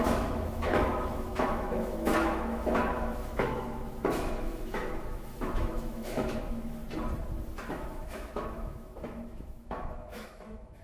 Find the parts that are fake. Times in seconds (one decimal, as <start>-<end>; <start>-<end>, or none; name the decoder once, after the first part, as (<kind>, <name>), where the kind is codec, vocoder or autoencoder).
0.0-6.8 (autoencoder, DAC-VAE); 7.7-10.8